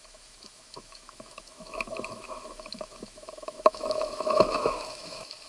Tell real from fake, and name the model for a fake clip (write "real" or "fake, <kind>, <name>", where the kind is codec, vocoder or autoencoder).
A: fake, autoencoder, DAC-VAE